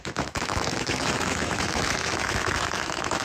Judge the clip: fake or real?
fake